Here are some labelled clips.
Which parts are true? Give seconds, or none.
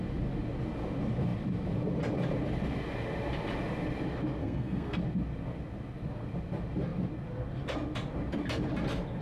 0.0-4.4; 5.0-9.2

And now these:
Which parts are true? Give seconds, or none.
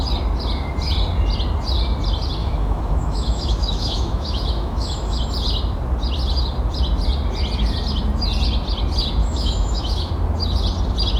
0.0-2.4; 5.2-9.2; 10.1-11.2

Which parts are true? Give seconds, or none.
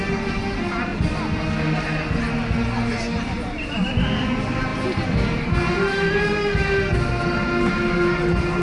0.0-8.6